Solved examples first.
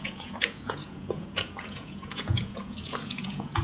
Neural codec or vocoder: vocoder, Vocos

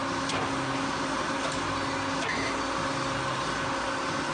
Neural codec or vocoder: none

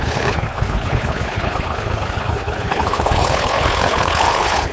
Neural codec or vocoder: codec, HILCodec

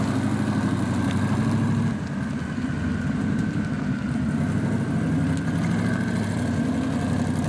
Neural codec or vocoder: none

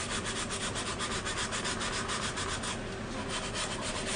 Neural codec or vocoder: none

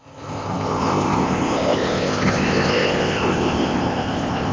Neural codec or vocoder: codec, ZipCodec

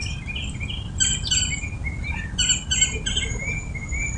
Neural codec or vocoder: none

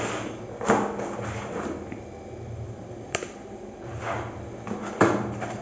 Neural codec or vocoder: none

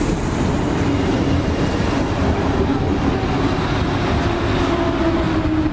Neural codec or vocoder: none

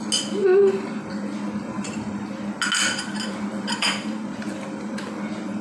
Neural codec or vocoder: none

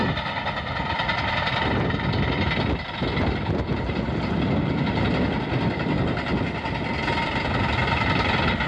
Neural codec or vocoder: none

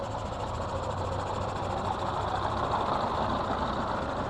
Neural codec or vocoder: vocoder, BigVGAN v2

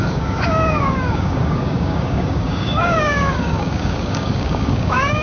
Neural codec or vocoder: codec, DAC